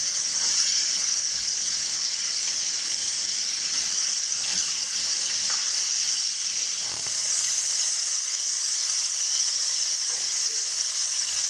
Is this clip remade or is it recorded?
remade